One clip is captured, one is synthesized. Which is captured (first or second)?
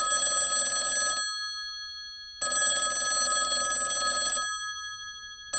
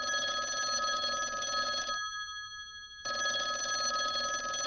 first